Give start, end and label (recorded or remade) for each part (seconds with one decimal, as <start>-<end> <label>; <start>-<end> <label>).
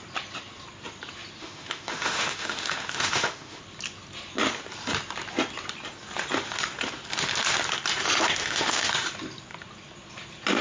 0.0-1.4 recorded; 1.4-3.6 remade; 3.6-8.4 recorded; 8.4-8.9 remade; 8.9-10.6 recorded